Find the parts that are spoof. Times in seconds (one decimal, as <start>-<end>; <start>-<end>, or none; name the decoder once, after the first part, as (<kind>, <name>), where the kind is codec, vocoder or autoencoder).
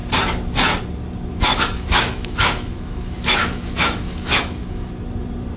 1.5-4.9 (autoencoder, DAC-VAE)